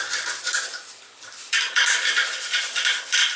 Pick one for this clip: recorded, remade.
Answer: remade